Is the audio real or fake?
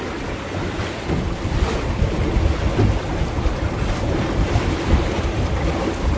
real